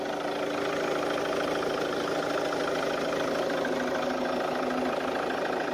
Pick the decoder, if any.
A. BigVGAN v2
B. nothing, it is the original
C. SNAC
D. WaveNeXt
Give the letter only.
B